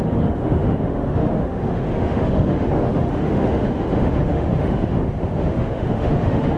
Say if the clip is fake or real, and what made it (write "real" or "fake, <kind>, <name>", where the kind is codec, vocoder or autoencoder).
fake, autoencoder, DAC-VAE